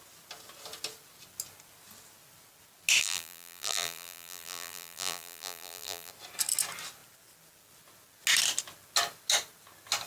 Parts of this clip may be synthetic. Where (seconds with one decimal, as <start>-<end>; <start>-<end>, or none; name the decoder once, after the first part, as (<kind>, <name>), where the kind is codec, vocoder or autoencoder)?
3.0-6.1 (vocoder, BigVGAN v2)